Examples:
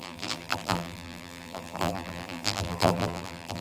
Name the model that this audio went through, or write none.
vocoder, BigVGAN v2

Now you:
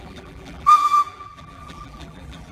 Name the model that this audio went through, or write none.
vocoder, BigVGAN v2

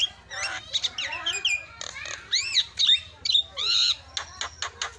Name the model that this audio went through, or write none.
none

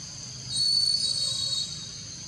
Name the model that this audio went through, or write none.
none